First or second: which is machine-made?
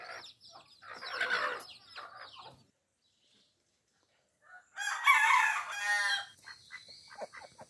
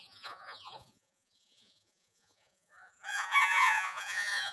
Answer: second